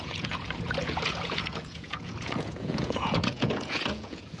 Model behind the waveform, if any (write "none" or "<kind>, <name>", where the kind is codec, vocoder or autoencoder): vocoder, Vocos